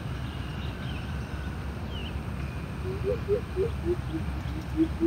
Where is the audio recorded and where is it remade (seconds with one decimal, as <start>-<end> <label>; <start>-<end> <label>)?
0.0-5.1 recorded